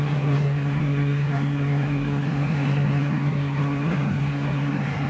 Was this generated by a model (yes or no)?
yes